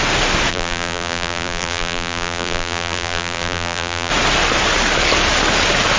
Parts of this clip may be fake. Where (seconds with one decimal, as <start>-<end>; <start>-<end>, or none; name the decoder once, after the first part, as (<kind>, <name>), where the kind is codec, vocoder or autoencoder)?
0.5-4.1 (vocoder, BigVGAN v2)